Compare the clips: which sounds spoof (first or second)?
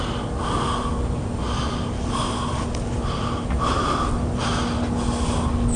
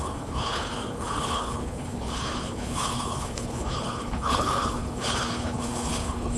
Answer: second